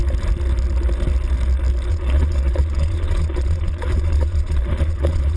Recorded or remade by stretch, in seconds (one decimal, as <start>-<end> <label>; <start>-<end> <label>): 0.0-1.9 recorded; 1.9-5.4 remade